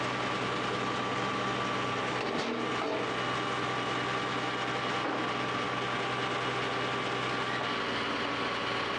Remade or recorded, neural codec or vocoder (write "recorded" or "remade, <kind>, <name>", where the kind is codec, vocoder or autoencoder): recorded